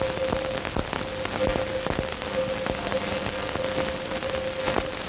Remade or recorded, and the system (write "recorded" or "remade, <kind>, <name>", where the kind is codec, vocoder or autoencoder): recorded